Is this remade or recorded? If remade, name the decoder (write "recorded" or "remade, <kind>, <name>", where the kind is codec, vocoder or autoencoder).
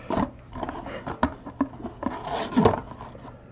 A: recorded